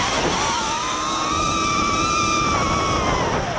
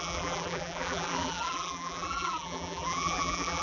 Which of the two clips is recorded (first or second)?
first